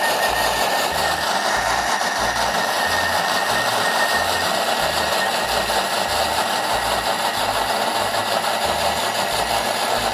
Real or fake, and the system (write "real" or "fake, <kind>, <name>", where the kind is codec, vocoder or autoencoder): real